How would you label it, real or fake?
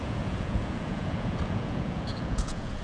fake